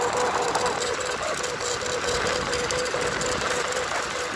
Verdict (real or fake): real